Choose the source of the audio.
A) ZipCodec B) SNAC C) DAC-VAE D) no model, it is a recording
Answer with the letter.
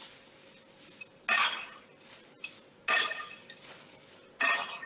D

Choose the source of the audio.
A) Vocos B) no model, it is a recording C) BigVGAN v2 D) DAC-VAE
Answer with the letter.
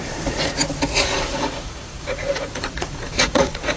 A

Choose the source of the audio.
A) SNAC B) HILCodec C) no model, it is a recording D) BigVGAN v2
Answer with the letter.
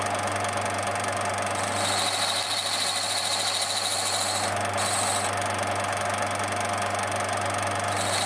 C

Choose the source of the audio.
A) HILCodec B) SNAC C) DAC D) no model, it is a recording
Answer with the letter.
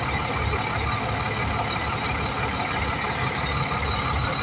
D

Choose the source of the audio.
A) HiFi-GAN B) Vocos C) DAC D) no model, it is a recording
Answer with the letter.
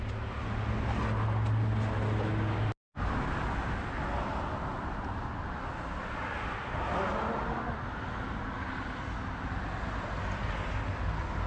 D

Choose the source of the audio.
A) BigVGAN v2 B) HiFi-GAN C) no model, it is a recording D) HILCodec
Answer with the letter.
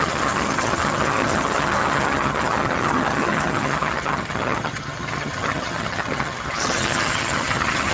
B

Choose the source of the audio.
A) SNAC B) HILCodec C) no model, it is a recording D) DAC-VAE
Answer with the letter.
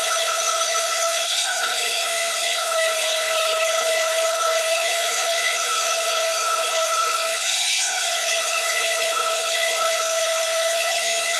B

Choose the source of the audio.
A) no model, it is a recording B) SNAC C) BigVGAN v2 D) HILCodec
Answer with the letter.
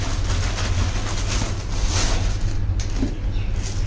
A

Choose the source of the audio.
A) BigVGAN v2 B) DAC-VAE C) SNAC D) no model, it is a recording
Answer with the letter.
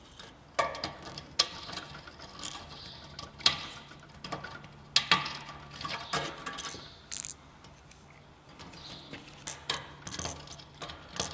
D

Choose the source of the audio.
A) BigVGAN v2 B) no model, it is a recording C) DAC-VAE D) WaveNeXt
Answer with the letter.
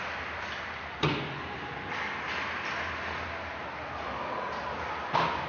B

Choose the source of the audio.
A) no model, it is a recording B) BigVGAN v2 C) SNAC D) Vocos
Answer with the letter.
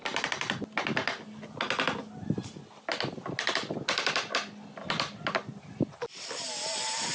A